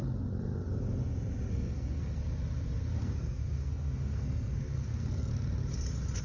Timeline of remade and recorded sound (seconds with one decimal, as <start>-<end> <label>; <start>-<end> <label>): 0.0-1.5 recorded; 1.5-2.2 remade; 2.2-3.0 recorded; 3.0-5.3 remade; 5.3-6.2 recorded